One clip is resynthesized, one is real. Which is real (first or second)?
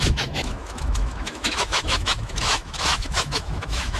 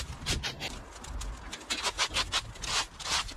second